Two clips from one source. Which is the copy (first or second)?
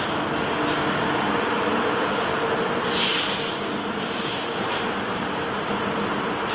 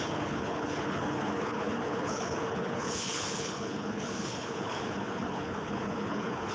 second